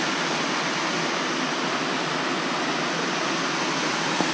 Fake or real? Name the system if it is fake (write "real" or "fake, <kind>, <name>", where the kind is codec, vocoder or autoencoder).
real